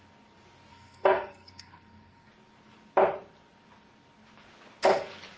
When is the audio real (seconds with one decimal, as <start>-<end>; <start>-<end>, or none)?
0.0-0.7; 2.3-5.4